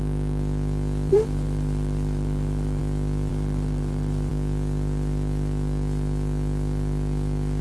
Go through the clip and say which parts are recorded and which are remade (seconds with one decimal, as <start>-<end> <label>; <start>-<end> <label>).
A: 0.0-1.1 recorded; 1.1-2.8 remade; 2.8-3.3 recorded; 3.3-4.3 remade; 4.3-7.6 recorded